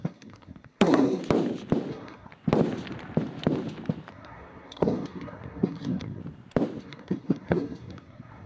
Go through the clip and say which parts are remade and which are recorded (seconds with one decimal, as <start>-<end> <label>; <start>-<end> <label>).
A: 0.0-1.2 remade; 1.2-1.9 recorded; 1.9-2.3 remade; 2.3-4.1 recorded; 4.1-6.2 remade; 6.2-6.8 recorded; 6.8-8.5 remade